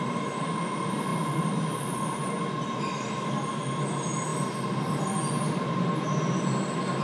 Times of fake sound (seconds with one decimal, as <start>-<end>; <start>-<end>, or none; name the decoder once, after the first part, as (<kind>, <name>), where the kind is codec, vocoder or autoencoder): none